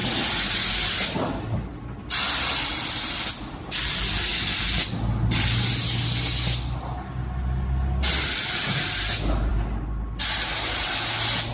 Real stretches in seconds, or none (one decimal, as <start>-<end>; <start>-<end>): 0.0-11.5